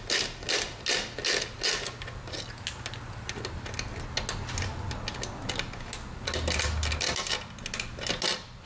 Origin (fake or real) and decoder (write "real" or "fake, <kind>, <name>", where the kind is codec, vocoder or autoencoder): real